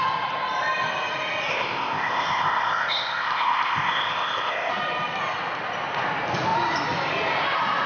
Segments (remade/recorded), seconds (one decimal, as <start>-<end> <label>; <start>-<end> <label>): 0.0-1.5 recorded; 1.5-4.7 remade; 4.7-7.9 recorded